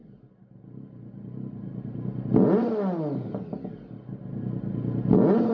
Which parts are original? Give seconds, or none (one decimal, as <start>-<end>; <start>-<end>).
0.0-5.5